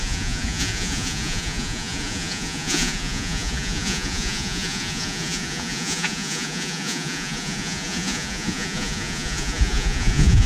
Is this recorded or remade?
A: remade